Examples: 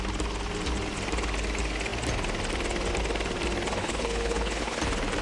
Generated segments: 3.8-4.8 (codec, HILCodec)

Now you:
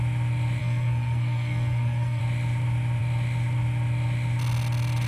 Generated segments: 0.6-2.2 (codec, SNAC)